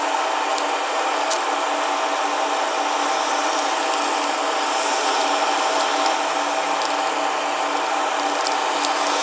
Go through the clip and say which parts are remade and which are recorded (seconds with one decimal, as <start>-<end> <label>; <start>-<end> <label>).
0.0-5.2 recorded; 5.2-5.8 remade; 5.8-9.2 recorded